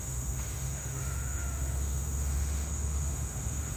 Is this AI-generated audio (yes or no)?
yes